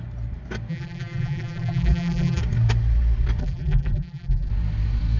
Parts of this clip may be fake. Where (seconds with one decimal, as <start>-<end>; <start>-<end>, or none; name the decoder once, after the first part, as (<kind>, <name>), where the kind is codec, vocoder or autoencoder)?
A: 0.7-2.4 (vocoder, BigVGAN v2); 3.4-4.5